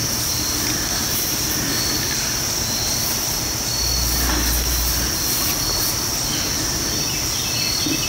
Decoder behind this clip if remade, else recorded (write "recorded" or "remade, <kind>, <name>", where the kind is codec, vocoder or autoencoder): recorded